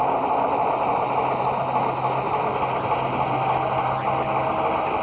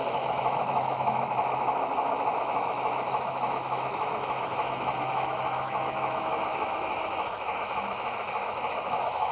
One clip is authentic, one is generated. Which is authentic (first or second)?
first